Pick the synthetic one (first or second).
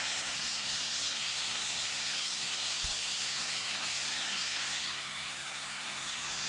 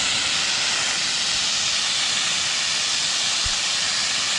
first